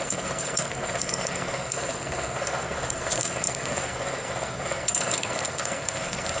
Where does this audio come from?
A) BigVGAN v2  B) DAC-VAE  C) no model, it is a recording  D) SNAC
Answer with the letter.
D